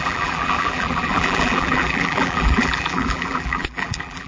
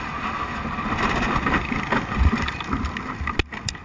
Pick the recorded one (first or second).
second